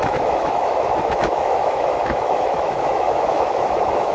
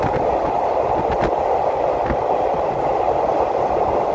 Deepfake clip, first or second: first